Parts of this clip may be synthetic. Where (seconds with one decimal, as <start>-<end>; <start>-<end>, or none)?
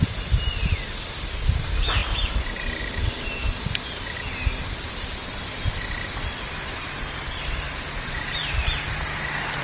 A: 0.0-3.4; 5.4-9.6